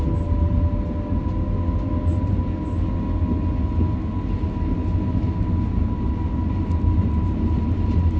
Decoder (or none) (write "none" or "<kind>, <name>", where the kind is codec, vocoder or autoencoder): none